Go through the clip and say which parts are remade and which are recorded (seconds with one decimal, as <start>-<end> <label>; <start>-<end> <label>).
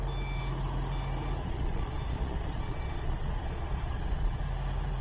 0.0-1.4 recorded; 1.4-4.4 remade; 4.4-5.0 recorded